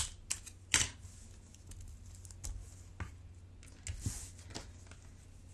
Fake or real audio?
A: real